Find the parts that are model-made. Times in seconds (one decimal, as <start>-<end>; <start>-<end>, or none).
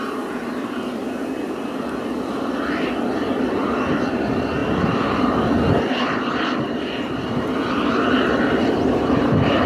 none